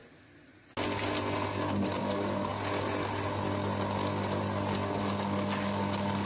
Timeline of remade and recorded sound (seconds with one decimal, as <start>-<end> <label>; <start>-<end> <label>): 0.0-2.0 recorded; 2.0-2.5 remade; 2.5-5.0 recorded; 5.0-6.3 remade